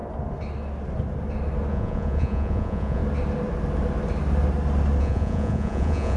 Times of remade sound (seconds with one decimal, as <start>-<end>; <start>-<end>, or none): 1.7-3.0; 5.0-6.2